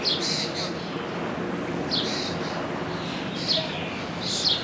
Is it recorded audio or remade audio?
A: recorded